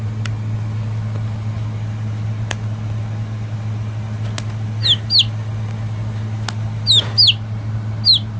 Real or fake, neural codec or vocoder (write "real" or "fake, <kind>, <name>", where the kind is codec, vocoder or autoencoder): real